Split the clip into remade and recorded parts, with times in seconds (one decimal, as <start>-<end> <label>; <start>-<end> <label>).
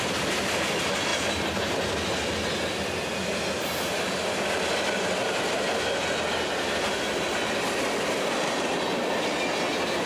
0.0-10.1 recorded